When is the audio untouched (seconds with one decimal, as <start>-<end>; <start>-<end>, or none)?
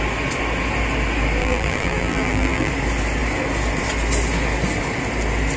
0.0-1.4; 2.7-5.6